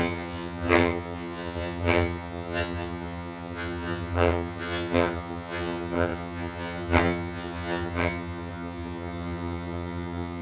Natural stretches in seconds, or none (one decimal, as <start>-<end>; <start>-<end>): none